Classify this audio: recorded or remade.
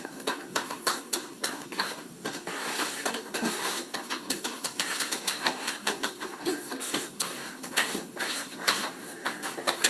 remade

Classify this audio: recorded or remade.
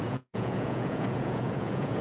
remade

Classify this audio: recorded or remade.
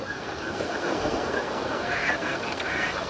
remade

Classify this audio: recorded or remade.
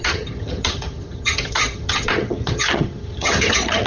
remade